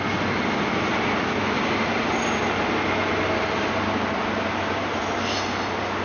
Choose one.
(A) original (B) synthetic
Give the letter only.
A